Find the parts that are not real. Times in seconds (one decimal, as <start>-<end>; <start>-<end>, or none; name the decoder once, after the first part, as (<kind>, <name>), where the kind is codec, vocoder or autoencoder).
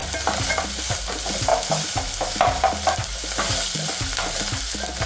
none